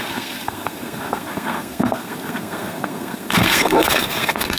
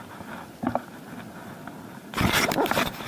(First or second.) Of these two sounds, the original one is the second